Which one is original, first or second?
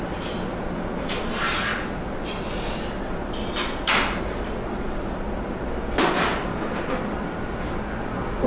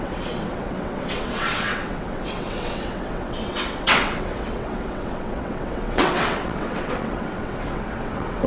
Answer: first